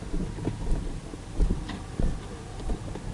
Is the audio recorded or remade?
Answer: recorded